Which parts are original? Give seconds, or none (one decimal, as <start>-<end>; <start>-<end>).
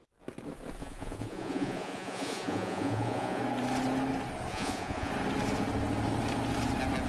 0.0-0.8; 3.4-4.5; 5.1-7.1